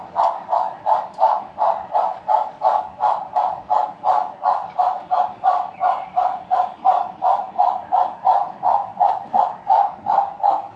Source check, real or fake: fake